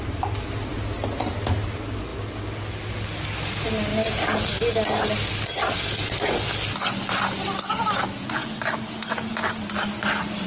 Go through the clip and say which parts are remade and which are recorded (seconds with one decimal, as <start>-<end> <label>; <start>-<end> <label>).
0.0-10.5 recorded